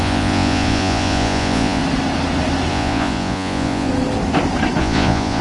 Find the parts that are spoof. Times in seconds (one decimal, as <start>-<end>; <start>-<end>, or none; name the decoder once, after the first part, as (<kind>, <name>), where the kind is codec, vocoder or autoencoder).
0.0-1.8 (vocoder, Vocos); 2.7-3.9; 4.8-5.4